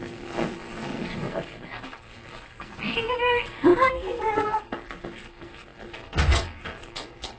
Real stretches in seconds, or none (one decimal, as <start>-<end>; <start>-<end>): none